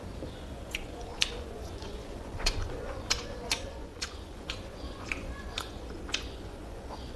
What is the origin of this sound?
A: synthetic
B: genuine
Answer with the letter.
A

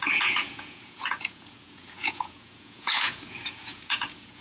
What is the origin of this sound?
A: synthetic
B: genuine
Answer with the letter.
A